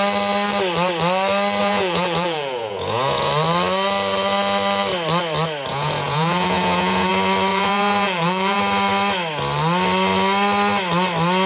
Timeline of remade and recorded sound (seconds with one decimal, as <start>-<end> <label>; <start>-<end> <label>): 0.0-1.6 recorded; 1.6-3.3 remade; 3.3-5.7 recorded; 5.7-7.1 remade; 7.1-7.5 recorded; 7.5-8.6 remade; 8.6-11.5 recorded